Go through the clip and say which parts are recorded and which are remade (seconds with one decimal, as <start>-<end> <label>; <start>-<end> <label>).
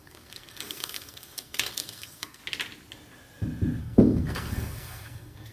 0.0-2.4 remade; 2.4-3.8 recorded; 3.8-5.5 remade